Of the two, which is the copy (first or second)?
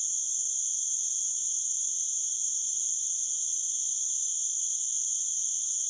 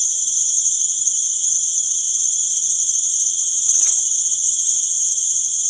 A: second